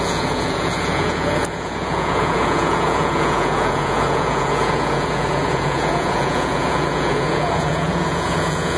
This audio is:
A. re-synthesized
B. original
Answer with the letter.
A